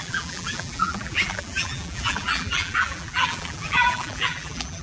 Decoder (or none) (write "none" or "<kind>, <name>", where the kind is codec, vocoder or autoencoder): vocoder, BigVGAN v2